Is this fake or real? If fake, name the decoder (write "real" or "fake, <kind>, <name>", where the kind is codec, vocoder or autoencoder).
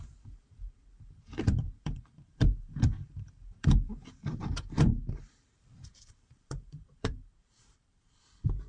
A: fake, vocoder, BigVGAN v2